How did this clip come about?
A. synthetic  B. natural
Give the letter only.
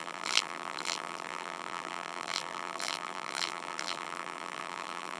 A